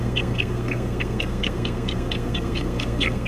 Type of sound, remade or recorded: remade